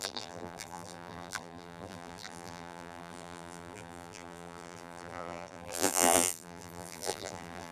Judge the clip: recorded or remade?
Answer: remade